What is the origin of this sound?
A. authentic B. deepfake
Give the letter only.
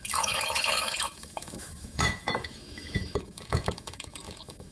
B